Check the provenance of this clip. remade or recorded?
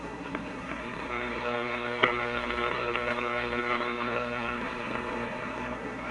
remade